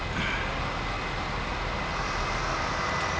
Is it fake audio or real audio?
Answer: real